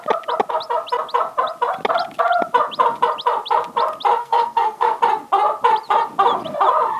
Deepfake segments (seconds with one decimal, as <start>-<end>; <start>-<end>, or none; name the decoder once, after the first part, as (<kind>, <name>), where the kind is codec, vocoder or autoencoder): 4.2-5.0 (codec, SNAC)